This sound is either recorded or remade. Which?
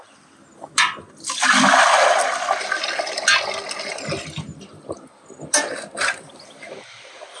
recorded